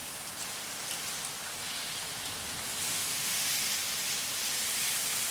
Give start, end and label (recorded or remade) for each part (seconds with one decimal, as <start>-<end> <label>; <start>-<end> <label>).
0.0-2.9 recorded; 2.9-3.5 remade; 3.5-5.3 recorded

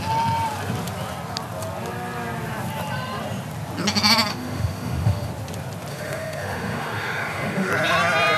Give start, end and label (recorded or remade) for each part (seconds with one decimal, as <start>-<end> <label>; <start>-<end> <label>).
0.0-4.3 recorded; 4.3-5.3 remade; 5.3-5.9 recorded; 5.9-7.7 remade; 7.7-8.4 recorded